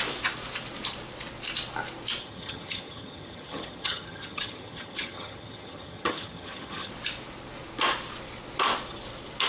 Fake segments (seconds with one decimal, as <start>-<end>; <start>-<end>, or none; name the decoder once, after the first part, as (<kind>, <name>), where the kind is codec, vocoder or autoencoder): 2.2-6.9 (vocoder, HiFi-GAN)